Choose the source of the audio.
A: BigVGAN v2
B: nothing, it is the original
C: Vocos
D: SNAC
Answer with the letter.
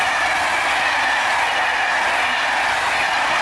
B